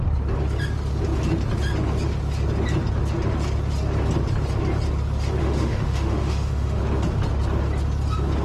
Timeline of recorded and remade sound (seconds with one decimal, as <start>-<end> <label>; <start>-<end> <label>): 0.0-5.4 recorded; 5.4-6.8 remade; 6.8-8.4 recorded